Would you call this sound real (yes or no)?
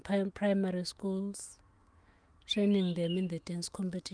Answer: no